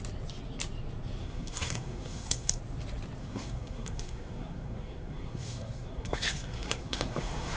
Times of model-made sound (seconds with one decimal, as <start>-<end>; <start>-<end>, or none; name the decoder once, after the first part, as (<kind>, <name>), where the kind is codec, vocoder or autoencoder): 1.2-2.6 (codec, SNAC); 3.2-7.6